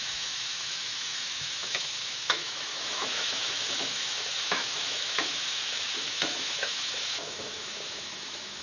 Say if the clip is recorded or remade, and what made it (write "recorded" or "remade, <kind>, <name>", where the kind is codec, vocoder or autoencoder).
remade, autoencoder, DAC-VAE